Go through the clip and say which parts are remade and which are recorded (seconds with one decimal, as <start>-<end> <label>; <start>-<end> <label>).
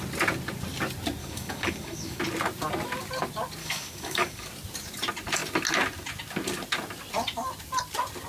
0.0-1.2 recorded; 1.2-2.2 remade; 2.2-3.6 recorded; 3.6-4.5 remade; 4.5-8.3 recorded